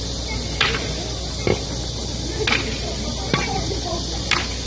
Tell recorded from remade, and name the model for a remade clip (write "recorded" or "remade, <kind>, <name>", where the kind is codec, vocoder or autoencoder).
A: recorded